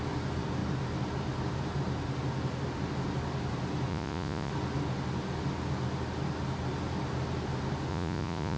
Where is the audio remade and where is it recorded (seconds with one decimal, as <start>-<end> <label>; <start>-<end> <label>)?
0.0-3.9 recorded; 3.9-4.5 remade; 4.5-7.9 recorded; 7.9-8.6 remade